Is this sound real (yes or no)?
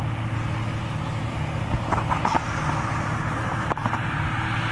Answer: yes